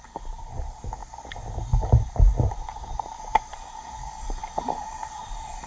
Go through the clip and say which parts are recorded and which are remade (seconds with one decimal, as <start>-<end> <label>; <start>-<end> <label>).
0.0-1.0 remade; 1.0-2.3 recorded; 2.3-3.3 remade; 3.3-4.0 recorded; 4.0-4.4 remade; 4.4-5.2 recorded; 5.2-5.7 remade